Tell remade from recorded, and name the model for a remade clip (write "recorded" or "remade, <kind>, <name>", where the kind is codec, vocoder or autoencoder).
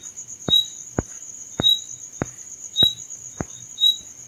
recorded